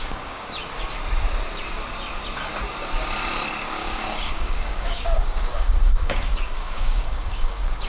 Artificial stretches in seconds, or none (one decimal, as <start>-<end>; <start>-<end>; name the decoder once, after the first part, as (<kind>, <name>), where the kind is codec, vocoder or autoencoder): 0.0-0.5 (codec, DAC); 3.8-7.9